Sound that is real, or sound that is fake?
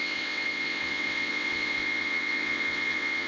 fake